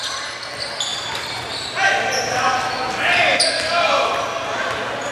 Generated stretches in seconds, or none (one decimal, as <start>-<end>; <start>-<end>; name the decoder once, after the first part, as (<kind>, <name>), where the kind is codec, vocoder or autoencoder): 0.9-1.9 (vocoder, BigVGAN v2); 3.3-4.1